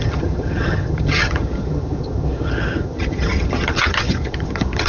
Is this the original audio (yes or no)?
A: no